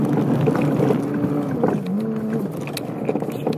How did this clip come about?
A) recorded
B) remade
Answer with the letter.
A